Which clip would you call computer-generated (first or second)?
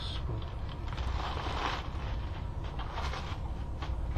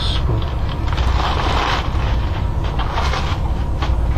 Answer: first